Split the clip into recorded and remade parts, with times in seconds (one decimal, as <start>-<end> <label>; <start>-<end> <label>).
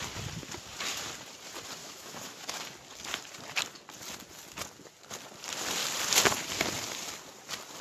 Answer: 0.0-1.8 recorded; 1.8-2.6 remade; 2.6-7.8 recorded